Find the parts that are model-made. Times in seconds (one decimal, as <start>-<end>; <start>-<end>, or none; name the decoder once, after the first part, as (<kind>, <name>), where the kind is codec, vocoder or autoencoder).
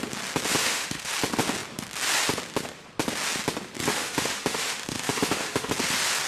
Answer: 0.6-1.1 (autoencoder, DAC-VAE); 3.9-5.7